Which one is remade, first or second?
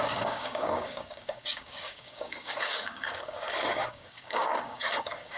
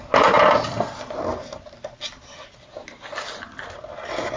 first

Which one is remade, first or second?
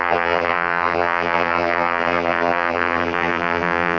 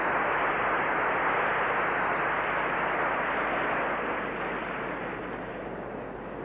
first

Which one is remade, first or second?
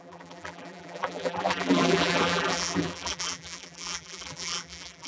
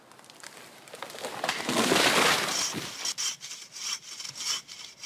first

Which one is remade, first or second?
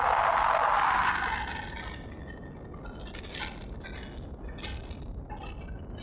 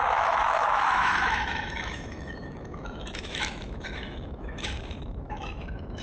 second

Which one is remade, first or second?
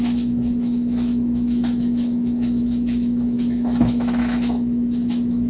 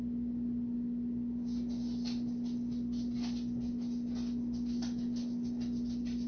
first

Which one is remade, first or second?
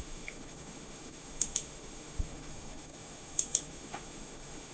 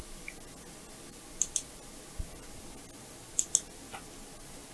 first